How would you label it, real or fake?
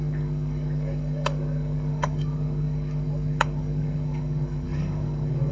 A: fake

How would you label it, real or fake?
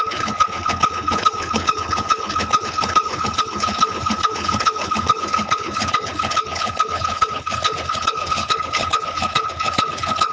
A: fake